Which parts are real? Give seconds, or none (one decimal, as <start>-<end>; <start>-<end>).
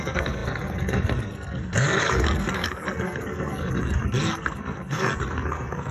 none